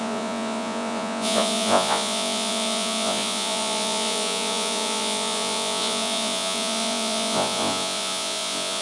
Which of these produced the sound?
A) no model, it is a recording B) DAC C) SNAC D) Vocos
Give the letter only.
D